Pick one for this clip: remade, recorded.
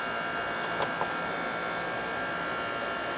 recorded